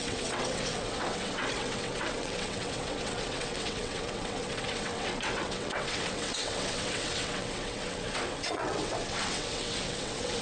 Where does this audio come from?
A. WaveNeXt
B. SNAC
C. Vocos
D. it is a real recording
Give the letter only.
A